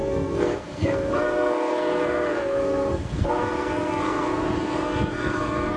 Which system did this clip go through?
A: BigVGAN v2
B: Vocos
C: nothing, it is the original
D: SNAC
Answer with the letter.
D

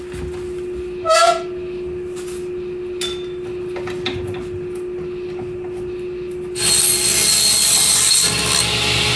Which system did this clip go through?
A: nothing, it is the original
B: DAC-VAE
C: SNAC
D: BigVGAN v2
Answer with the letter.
A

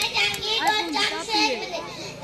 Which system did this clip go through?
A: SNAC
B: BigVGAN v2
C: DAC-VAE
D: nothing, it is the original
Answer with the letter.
D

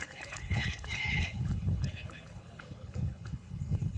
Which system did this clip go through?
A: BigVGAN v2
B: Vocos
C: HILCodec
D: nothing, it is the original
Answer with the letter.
C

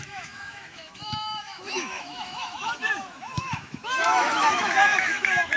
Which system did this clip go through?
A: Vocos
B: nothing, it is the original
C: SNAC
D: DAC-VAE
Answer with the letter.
D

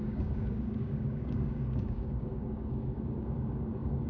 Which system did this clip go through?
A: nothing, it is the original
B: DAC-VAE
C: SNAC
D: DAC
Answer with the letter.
D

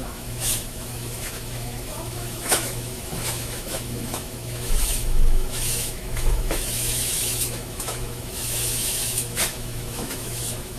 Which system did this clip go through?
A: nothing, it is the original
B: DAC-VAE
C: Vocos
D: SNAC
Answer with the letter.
B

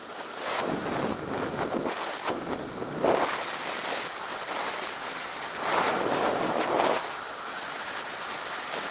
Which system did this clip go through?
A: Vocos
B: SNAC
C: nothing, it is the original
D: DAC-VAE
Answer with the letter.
C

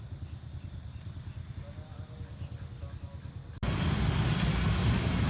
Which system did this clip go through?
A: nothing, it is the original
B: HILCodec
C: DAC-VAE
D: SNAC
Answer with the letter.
A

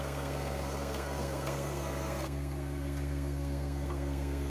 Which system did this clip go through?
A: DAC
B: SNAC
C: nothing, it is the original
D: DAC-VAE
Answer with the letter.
B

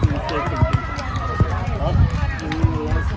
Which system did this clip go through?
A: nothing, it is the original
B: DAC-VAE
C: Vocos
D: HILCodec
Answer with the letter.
A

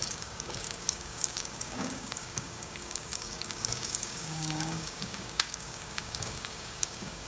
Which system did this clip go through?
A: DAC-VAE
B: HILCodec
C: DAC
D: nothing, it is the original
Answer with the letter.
C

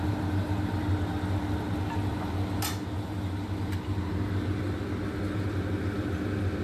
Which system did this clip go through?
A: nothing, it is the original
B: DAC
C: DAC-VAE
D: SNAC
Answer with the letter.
A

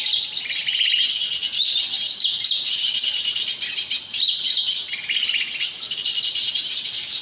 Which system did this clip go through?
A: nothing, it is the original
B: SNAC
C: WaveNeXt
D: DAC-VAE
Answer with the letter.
A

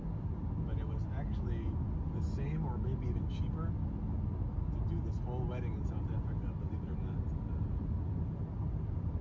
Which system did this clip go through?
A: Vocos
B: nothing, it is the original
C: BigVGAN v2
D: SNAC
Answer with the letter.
B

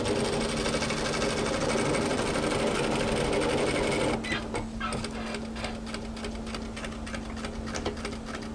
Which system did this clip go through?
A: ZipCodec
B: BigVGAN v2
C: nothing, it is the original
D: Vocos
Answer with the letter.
C